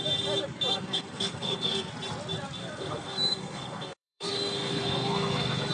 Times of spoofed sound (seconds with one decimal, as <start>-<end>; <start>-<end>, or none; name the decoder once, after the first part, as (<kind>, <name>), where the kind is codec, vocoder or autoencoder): 0.7-1.9 (codec, SNAC); 2.6-5.7